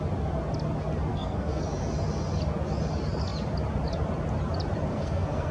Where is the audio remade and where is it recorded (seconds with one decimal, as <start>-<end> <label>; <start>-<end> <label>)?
0.0-1.1 recorded; 1.1-1.6 remade; 1.6-4.9 recorded; 4.9-5.5 remade